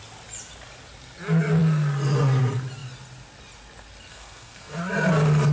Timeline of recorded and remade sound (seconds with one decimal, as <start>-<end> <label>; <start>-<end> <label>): 0.0-4.1 recorded; 4.1-4.8 remade; 4.8-5.5 recorded